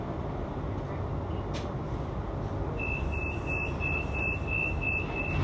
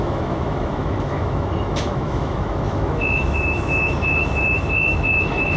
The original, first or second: first